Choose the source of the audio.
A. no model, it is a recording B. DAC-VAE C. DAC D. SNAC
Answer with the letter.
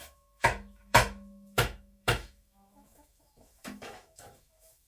B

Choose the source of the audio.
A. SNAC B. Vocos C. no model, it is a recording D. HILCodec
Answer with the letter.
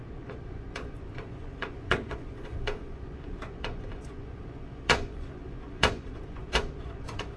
B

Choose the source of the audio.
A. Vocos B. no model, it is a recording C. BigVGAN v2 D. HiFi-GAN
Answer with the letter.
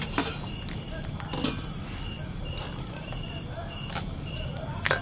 C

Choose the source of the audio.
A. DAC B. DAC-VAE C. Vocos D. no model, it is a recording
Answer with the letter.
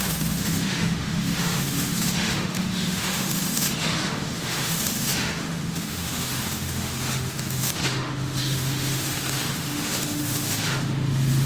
B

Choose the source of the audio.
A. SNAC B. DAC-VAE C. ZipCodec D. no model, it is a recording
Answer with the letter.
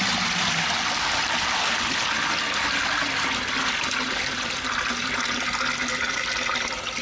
D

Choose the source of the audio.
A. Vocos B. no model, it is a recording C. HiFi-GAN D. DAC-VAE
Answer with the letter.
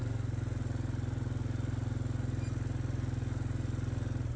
B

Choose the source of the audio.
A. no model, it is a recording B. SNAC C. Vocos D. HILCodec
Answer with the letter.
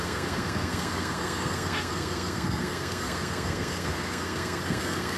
B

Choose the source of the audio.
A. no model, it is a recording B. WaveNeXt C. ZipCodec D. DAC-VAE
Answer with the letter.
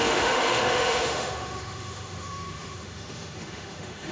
D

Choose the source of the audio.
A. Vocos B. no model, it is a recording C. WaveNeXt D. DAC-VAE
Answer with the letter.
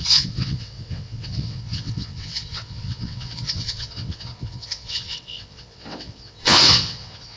C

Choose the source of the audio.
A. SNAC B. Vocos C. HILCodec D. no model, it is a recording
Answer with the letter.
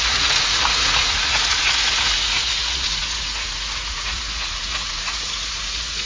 B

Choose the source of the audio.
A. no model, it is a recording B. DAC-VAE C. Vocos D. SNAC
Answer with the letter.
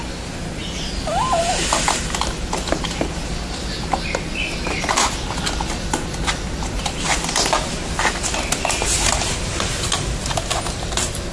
A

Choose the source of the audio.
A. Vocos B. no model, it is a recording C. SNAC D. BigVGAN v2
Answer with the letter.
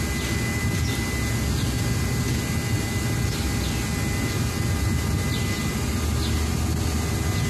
B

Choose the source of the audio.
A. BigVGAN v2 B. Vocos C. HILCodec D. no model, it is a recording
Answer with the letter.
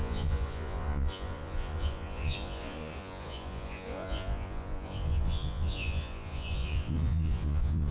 B